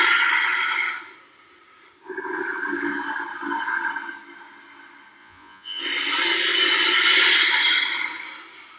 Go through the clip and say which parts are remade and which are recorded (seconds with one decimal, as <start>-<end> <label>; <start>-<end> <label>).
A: 0.0-5.2 recorded; 5.2-5.8 remade; 5.8-8.8 recorded